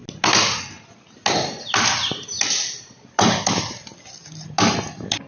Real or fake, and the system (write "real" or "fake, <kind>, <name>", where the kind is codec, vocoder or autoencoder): real